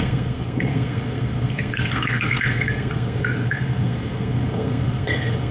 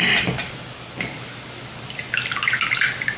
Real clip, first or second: second